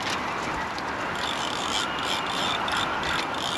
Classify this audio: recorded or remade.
recorded